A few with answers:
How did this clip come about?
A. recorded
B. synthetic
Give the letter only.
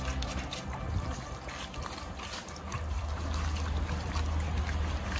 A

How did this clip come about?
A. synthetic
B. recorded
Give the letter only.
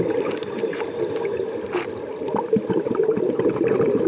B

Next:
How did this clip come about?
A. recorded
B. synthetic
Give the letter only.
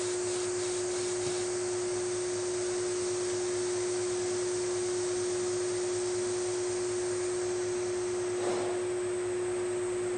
A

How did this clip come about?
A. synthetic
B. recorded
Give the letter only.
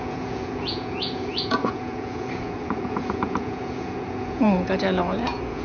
A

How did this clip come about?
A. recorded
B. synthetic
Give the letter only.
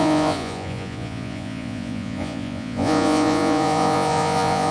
B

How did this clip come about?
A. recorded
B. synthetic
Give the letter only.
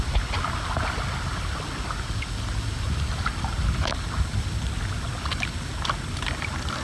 A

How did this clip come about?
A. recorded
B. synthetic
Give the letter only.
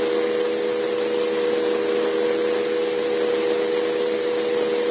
A